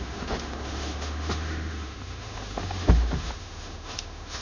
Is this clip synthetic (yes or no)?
yes